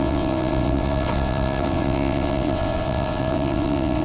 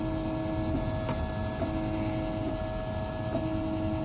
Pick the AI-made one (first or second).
first